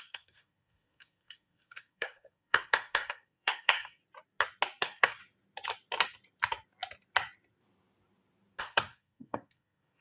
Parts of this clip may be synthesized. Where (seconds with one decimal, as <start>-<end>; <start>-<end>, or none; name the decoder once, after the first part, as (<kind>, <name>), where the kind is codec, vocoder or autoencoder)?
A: 0.0-4.0 (codec, SNAC); 4.8-5.2; 8.6-10.0